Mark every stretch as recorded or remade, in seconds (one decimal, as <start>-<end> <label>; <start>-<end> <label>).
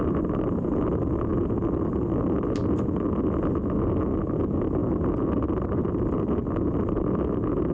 0.0-7.7 recorded